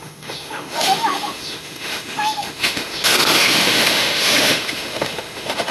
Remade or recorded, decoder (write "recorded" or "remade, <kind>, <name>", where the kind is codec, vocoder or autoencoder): remade, autoencoder, DAC-VAE